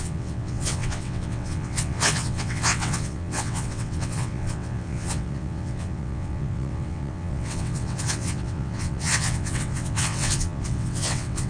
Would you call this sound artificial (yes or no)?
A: yes